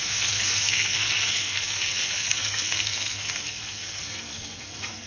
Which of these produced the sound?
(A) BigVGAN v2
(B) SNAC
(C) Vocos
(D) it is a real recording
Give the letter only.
B